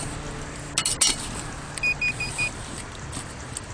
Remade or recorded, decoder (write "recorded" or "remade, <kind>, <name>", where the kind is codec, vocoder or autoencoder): recorded